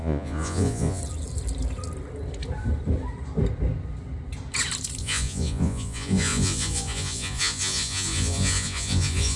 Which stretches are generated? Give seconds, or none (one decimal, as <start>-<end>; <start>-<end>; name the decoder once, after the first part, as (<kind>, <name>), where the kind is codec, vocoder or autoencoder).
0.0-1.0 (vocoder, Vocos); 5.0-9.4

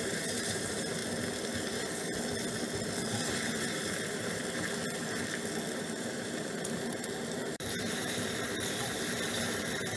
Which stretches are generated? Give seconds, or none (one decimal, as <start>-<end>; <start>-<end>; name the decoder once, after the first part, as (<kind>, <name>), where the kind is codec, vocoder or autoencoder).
0.0-1.0 (vocoder, BigVGAN v2); 3.5-4.4; 5.8-10.0

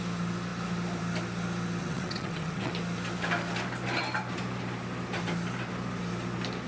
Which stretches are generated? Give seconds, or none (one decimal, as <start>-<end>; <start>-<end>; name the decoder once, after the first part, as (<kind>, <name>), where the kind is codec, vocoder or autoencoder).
1.8-2.7 (vocoder, WaveNeXt)